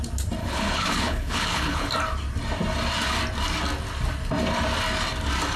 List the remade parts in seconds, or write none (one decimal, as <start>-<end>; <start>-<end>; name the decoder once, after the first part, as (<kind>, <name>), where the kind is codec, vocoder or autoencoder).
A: 0.4-1.9 (codec, HILCodec)